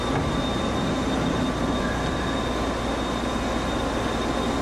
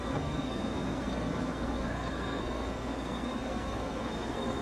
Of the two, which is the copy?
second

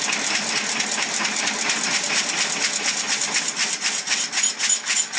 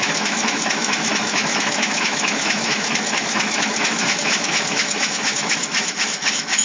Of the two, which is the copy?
second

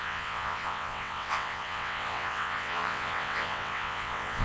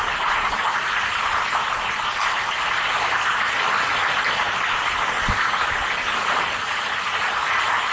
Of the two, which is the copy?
first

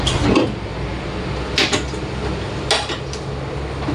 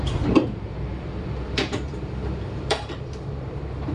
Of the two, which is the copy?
second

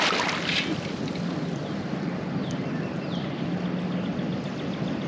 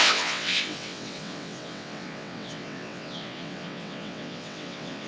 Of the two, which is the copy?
second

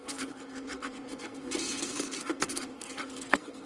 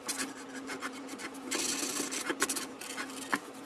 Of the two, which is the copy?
first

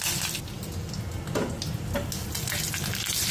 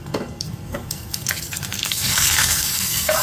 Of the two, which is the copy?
second